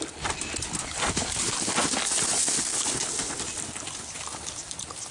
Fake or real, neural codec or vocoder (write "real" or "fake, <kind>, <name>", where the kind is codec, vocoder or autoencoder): real